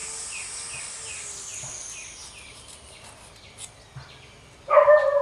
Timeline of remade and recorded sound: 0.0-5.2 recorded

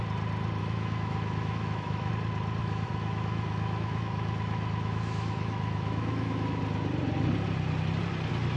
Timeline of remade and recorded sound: 0.0-0.6 recorded; 0.6-2.1 remade; 2.1-2.6 recorded; 2.6-6.6 remade; 6.6-8.6 recorded

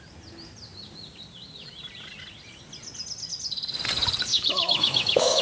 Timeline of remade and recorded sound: 0.0-4.3 recorded; 4.3-5.4 remade

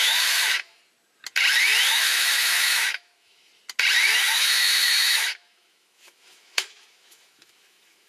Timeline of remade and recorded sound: 0.0-0.8 remade; 0.8-1.9 recorded; 1.9-3.5 remade; 3.5-4.1 recorded; 4.1-8.1 remade

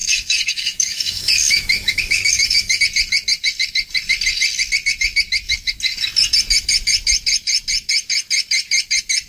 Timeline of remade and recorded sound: 0.0-2.8 remade; 2.8-9.3 recorded

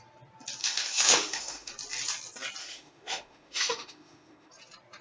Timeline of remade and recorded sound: 0.0-0.6 recorded; 0.6-1.7 remade; 1.7-2.6 recorded; 2.6-4.5 remade; 4.5-5.0 recorded

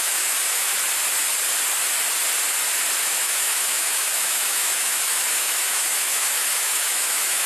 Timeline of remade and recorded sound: 0.0-0.7 remade; 0.7-3.0 recorded; 3.0-7.5 remade